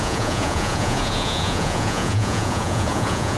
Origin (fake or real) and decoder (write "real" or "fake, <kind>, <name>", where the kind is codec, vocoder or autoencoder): fake, vocoder, Vocos